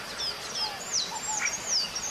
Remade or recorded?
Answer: recorded